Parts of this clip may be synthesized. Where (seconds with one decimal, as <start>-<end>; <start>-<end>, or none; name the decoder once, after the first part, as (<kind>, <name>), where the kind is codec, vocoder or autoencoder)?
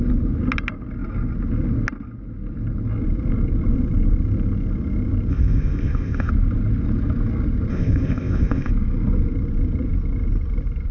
5.3-6.3 (codec, ZipCodec); 7.7-8.7